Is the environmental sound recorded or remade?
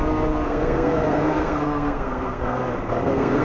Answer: remade